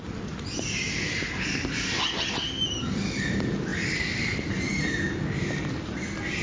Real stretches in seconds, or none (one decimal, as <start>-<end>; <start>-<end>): 0.0-6.4